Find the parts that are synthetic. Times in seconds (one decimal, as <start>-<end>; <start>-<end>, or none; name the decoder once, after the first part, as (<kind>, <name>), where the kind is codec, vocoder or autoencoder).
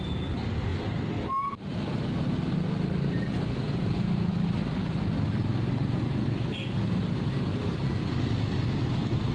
none